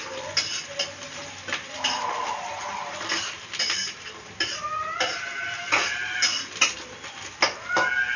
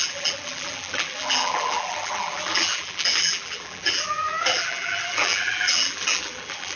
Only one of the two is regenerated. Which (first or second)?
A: second